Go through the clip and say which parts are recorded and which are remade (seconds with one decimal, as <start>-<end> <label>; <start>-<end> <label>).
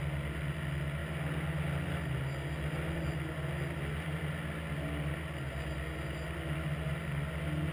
0.0-7.7 recorded